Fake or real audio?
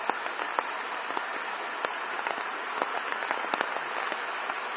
real